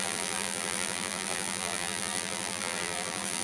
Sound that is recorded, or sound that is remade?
remade